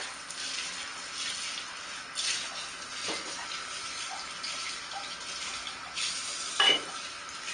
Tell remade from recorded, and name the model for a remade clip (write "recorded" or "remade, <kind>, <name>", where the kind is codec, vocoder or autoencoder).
recorded